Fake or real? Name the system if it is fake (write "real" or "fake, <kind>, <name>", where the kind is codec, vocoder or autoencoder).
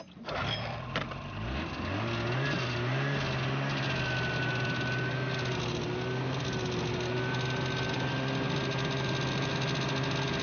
real